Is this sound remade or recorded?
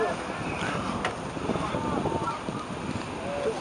recorded